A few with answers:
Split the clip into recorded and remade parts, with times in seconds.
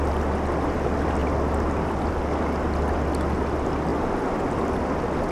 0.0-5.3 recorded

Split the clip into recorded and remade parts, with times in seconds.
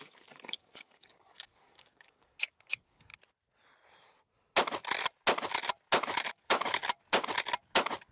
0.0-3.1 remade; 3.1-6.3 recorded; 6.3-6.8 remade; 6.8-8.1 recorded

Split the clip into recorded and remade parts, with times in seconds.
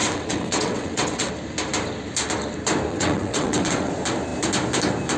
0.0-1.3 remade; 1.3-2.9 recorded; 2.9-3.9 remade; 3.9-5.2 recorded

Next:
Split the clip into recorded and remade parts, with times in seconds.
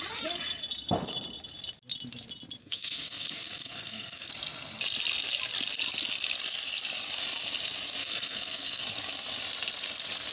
0.0-2.6 recorded; 2.6-4.3 remade; 4.3-8.0 recorded; 8.0-8.8 remade; 8.8-10.3 recorded